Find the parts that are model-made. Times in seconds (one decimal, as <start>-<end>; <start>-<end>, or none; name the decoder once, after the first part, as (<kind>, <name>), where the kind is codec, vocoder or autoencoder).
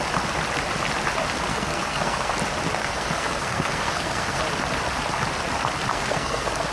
1.5-2.3 (codec, SNAC); 2.8-4.4; 5.9-6.7